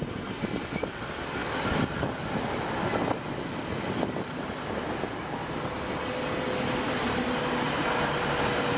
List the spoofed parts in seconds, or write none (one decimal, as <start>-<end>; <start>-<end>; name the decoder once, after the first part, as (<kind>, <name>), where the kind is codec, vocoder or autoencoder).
none